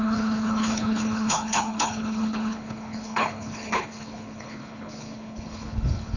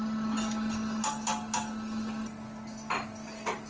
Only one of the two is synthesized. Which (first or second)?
first